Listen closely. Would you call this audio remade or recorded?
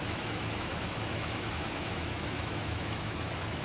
remade